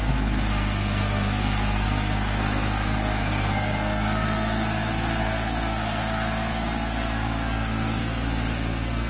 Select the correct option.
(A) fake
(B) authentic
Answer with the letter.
A